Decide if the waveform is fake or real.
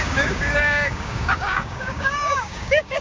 fake